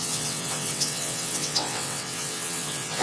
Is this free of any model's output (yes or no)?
no